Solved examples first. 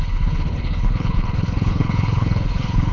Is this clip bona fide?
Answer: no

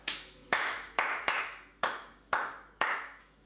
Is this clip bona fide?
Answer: no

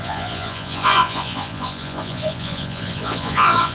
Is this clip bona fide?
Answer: no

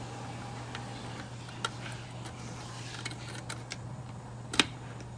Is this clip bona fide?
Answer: yes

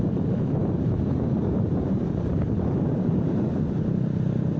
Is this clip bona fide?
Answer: no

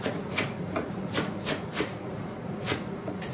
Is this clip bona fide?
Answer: no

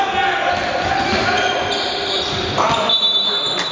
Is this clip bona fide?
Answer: yes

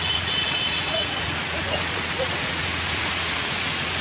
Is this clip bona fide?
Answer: no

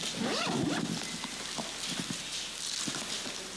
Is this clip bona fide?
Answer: yes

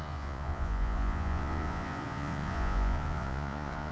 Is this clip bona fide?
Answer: no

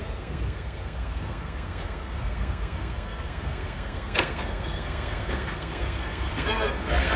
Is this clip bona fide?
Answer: no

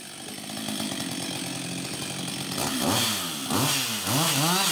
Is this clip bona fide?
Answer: yes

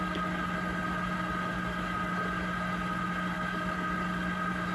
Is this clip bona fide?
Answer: yes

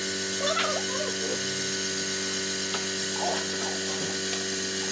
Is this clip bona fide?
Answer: yes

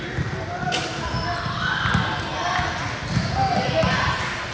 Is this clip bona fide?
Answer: yes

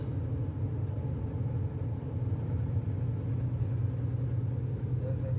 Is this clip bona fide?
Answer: yes